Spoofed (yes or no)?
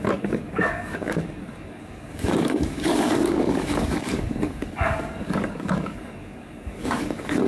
yes